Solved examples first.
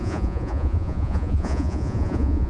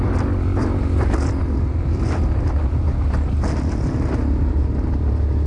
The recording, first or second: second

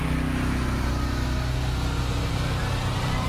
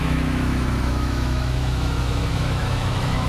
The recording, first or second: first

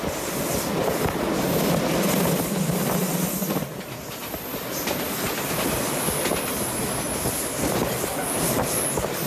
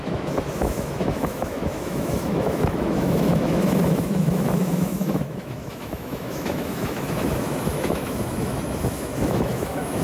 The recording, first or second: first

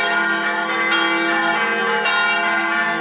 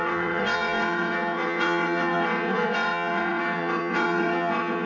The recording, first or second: first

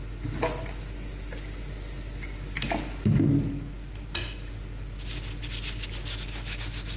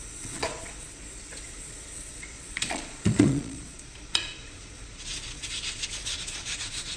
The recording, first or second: first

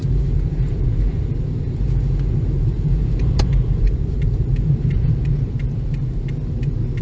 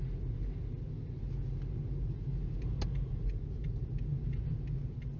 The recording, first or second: second